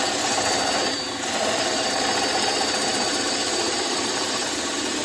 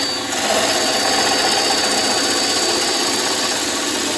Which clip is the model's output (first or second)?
first